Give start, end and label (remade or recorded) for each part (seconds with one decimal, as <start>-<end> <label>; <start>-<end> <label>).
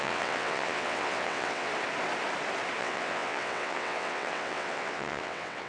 0.0-1.7 remade; 1.7-2.8 recorded; 2.8-5.7 remade